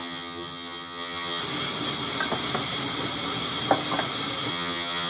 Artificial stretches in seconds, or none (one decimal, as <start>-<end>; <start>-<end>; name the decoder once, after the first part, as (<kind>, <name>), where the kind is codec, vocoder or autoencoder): 0.0-1.4 (vocoder, HiFi-GAN); 4.5-5.1